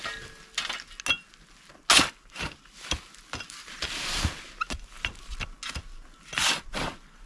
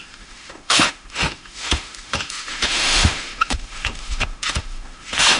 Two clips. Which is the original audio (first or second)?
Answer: first